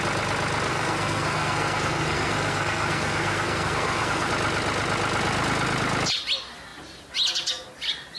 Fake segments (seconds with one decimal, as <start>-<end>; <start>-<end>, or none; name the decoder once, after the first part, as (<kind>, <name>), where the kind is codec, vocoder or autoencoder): 0.7-4.3 (codec, SNAC)